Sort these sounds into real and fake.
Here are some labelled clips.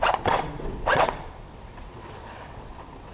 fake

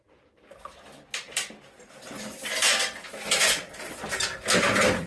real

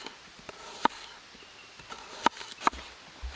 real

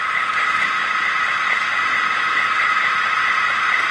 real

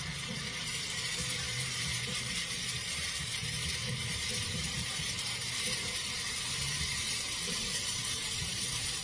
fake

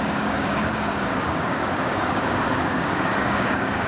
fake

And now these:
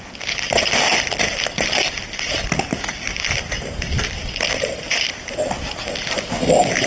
fake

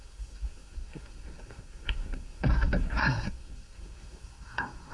fake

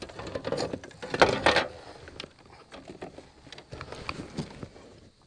real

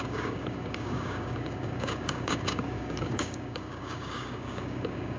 fake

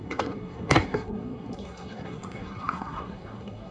fake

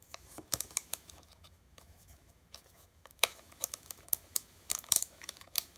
fake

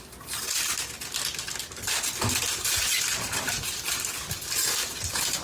real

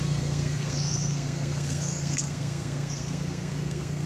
fake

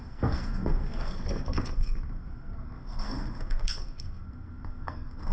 fake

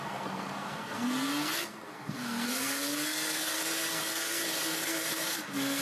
fake